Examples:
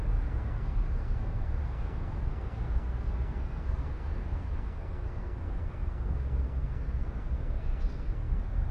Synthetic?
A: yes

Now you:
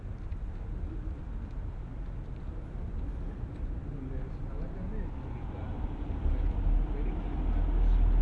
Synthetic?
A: no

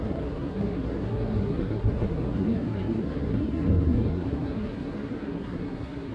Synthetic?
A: yes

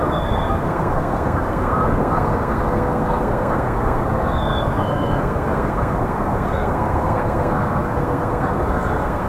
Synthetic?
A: yes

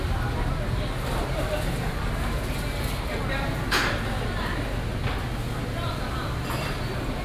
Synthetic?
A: no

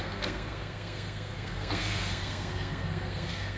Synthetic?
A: yes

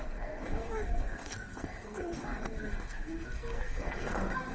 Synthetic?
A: yes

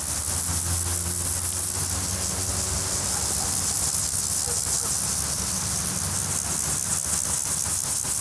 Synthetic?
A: no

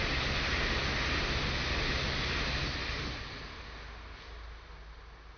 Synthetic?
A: no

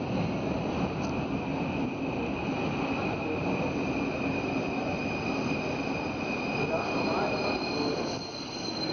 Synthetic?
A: no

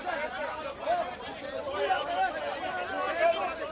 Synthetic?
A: no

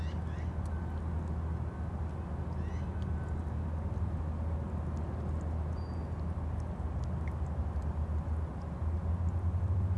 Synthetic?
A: no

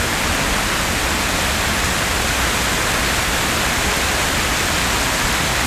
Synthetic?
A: no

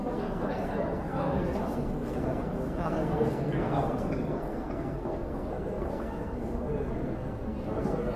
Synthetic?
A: yes